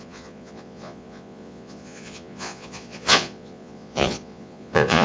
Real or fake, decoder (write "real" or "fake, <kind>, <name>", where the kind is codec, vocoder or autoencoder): fake, vocoder, Vocos